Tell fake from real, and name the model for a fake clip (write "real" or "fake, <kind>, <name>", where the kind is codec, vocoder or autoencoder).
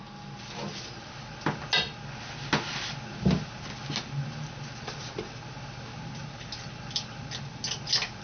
real